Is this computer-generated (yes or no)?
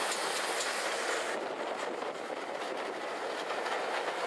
no